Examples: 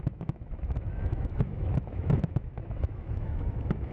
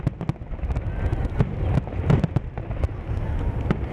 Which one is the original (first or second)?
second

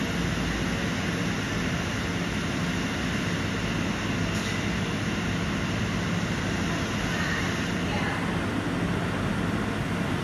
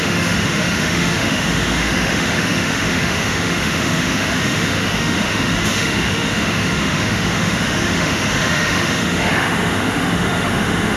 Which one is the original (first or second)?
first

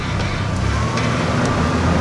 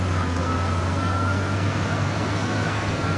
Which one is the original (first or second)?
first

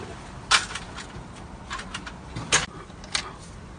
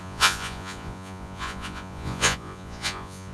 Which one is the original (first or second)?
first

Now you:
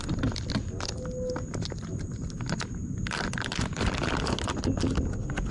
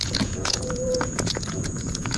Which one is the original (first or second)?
first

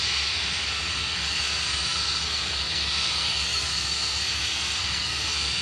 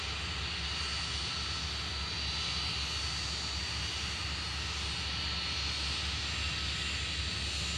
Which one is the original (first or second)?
second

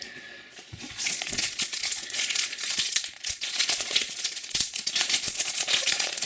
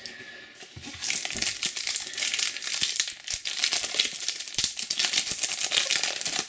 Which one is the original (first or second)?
second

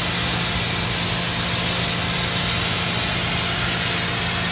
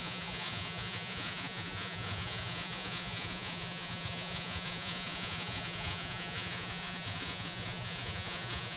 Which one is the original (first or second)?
first